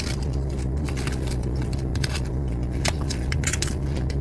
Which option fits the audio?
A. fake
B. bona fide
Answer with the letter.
A